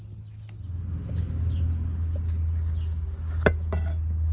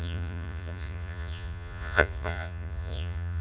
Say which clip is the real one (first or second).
first